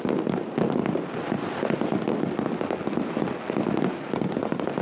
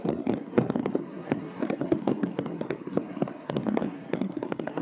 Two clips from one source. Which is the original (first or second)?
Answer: first